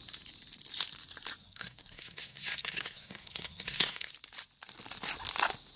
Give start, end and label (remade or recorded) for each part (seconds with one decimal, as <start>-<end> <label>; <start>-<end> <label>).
0.0-1.4 recorded; 1.4-4.1 remade; 4.1-5.8 recorded

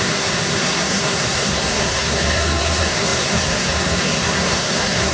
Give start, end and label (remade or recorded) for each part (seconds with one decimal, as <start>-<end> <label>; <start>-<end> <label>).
0.0-5.1 remade

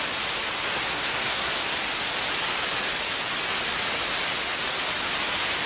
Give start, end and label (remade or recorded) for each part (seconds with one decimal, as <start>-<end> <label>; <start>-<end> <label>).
0.0-0.9 recorded; 0.9-1.5 remade; 1.5-5.7 recorded

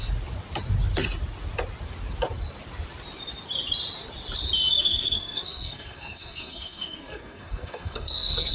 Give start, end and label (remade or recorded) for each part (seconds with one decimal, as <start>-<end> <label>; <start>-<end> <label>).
0.0-4.8 recorded; 4.8-8.5 remade